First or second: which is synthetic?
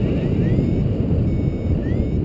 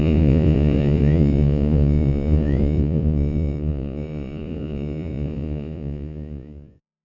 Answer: second